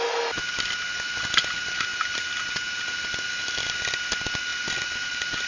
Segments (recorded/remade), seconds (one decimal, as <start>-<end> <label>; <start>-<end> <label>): 0.0-5.5 recorded